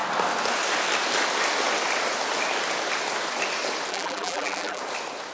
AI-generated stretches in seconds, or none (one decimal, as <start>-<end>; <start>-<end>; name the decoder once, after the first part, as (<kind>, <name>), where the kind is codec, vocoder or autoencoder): 3.9-4.8 (vocoder, BigVGAN v2)